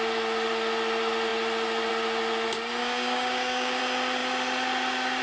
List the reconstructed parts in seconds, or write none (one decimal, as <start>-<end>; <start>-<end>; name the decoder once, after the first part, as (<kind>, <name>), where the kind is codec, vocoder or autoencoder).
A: 2.8-3.8 (codec, DAC)